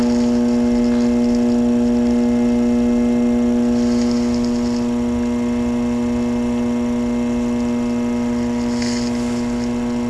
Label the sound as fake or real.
real